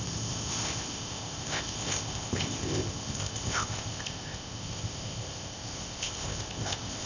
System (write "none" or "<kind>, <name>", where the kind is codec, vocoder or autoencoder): codec, ZipCodec